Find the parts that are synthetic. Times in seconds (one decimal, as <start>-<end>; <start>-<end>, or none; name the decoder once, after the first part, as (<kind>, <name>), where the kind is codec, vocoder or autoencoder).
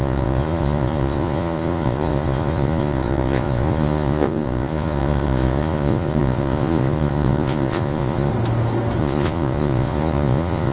0.0-8.3 (vocoder, Vocos); 9.0-10.7